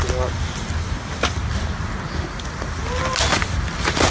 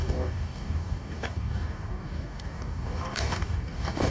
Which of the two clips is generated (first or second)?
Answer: second